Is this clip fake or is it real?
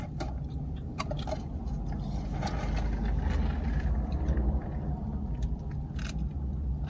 real